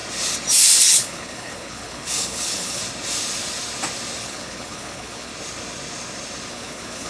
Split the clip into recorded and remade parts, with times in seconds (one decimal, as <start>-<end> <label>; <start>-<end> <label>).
0.0-0.8 recorded; 0.8-2.8 remade; 2.8-4.2 recorded; 4.2-5.3 remade; 5.3-6.5 recorded; 6.5-7.1 remade